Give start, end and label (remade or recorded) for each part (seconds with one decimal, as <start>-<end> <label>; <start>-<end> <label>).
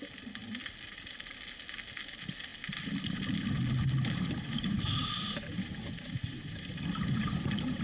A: 0.0-7.8 recorded